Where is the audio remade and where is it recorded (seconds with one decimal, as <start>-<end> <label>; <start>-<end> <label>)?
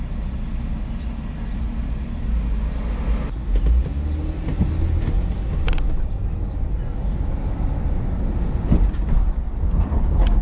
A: 0.0-10.4 recorded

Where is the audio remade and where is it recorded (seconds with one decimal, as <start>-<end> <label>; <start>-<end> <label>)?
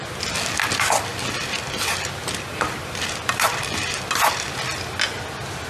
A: 0.0-5.7 recorded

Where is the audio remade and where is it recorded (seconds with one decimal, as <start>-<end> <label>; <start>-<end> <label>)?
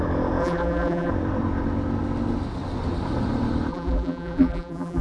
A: 0.0-0.4 recorded; 0.4-1.1 remade; 1.1-3.7 recorded; 3.7-5.0 remade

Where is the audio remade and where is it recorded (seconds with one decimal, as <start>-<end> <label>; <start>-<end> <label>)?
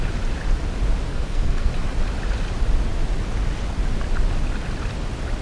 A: 0.0-1.1 recorded; 1.1-1.7 remade; 1.7-5.4 recorded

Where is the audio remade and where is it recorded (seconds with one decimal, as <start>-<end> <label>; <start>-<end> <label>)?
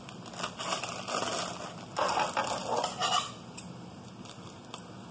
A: 0.0-5.1 recorded